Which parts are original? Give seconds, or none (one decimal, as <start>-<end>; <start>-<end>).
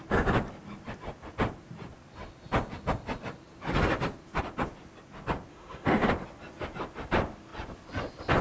0.0-5.5; 6.1-8.4